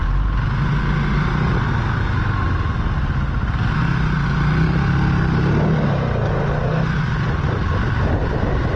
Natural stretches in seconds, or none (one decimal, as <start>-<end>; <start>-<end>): 0.0-8.8